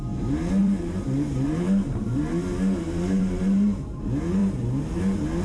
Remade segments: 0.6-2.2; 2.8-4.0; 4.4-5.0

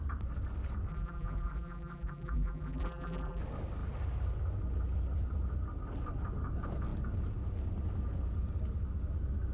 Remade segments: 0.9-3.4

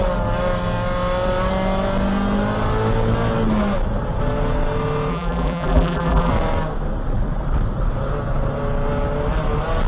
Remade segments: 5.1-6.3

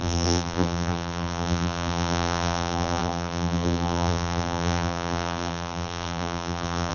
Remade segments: 0.0-6.9

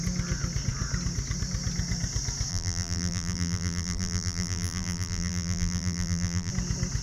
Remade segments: 2.5-6.5

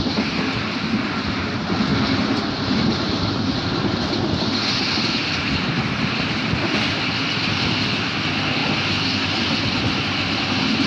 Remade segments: none

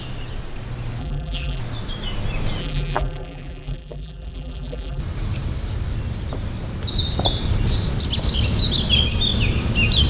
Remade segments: 1.0-1.6; 2.6-5.0

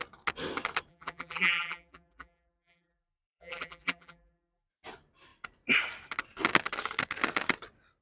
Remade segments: 0.9-4.7